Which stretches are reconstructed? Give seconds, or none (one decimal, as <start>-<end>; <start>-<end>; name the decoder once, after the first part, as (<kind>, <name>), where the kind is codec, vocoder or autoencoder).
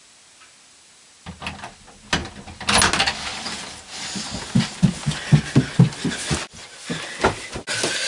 none